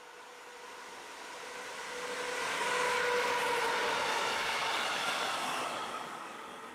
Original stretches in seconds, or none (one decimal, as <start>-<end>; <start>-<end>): 0.0-2.5; 3.0-4.1